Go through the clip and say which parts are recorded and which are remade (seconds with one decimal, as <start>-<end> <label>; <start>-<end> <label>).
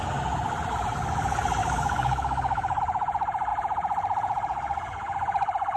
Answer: 0.0-1.6 recorded; 1.6-2.8 remade; 2.8-5.8 recorded